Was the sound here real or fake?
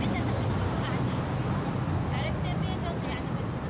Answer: real